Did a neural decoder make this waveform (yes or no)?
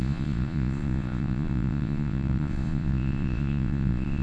yes